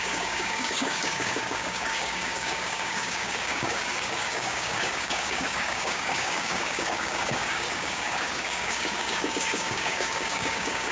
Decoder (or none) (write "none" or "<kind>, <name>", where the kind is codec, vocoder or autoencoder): codec, DAC